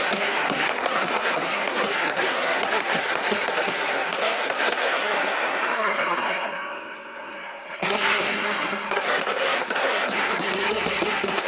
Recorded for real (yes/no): no